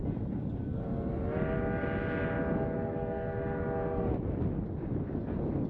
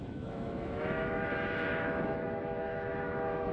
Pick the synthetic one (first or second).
second